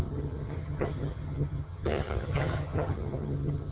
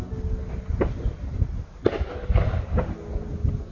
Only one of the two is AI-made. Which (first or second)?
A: first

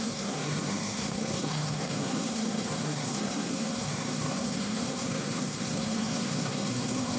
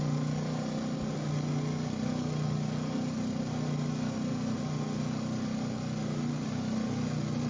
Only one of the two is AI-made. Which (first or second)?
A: first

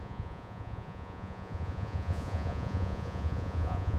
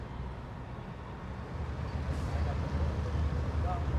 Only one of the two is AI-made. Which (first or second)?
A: first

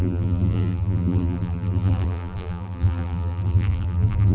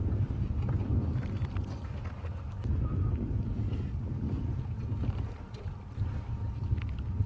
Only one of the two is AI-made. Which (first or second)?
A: first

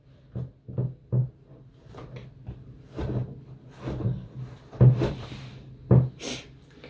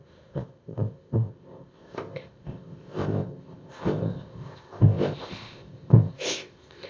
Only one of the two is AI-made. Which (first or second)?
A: second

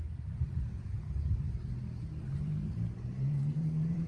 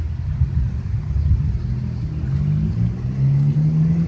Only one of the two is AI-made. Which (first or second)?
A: first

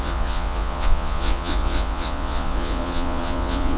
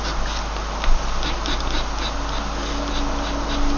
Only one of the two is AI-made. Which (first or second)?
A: first